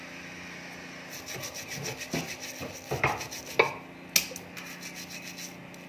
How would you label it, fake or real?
real